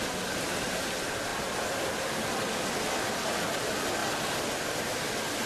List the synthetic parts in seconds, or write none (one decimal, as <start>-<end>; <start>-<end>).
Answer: none